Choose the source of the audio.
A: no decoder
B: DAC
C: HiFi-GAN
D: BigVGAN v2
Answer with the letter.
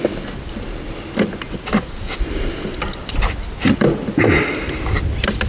A